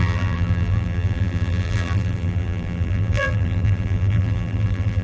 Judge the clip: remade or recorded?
remade